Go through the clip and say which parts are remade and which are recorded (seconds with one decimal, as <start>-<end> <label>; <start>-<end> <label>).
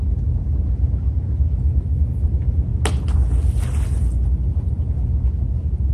0.0-5.9 recorded